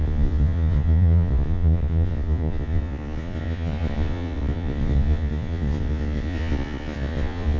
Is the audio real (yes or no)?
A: no